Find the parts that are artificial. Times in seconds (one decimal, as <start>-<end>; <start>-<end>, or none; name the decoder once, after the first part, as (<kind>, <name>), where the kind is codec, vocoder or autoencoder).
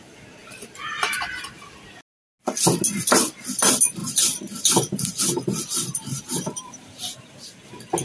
0.4-1.8 (vocoder, BigVGAN v2); 6.1-7.5